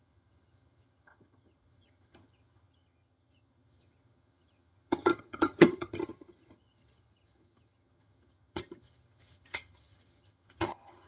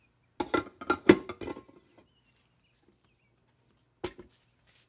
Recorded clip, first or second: second